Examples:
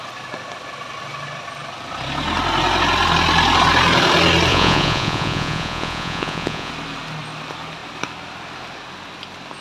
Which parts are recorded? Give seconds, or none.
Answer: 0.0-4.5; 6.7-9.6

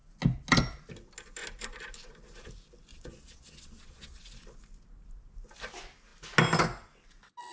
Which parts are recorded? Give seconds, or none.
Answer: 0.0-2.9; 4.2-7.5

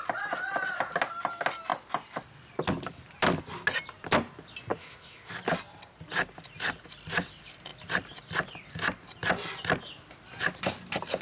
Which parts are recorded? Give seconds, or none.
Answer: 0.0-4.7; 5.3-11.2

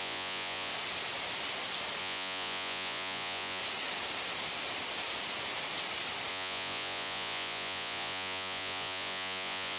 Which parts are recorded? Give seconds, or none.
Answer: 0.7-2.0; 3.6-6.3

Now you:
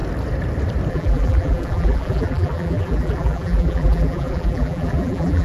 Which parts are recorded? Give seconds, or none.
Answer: 0.0-0.9